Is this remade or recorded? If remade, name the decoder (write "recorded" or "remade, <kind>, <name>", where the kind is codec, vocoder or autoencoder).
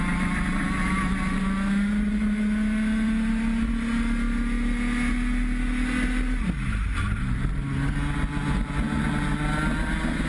recorded